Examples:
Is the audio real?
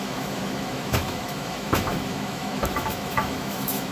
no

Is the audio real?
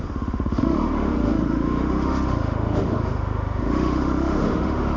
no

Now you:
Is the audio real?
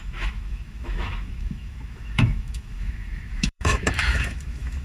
no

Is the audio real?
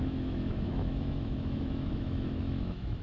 no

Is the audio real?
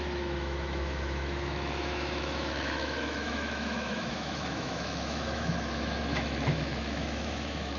no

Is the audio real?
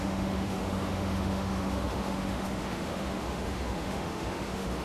no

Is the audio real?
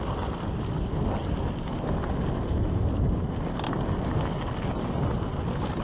yes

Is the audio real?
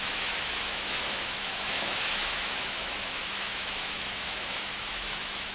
no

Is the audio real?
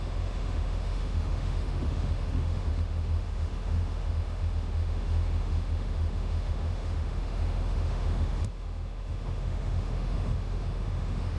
no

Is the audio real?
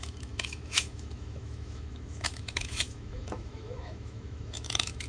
no